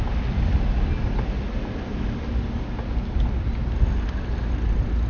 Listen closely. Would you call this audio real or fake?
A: real